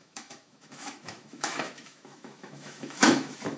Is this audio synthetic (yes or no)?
yes